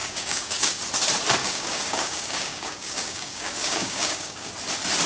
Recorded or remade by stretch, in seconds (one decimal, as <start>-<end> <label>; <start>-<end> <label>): 0.0-0.8 remade; 0.8-1.4 recorded; 1.4-4.5 remade; 4.5-5.1 recorded